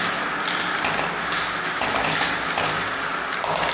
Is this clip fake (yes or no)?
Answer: no